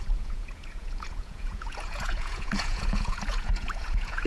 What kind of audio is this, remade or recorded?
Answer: remade